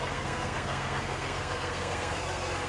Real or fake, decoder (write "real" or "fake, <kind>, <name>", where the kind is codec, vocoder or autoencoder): fake, codec, SNAC